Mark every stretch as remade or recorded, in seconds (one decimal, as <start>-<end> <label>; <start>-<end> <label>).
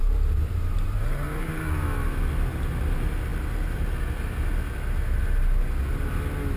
0.0-1.6 remade; 1.6-6.6 recorded